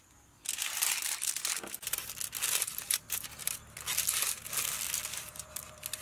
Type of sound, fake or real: real